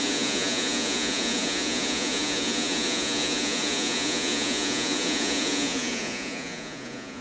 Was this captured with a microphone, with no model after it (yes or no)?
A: no